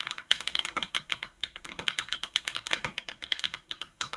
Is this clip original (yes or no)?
no